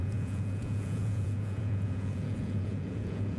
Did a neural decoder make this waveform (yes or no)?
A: yes